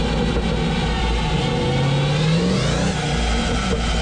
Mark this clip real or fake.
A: real